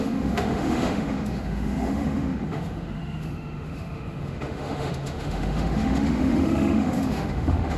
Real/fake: fake